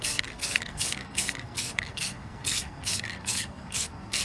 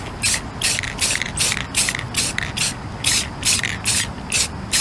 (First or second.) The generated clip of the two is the first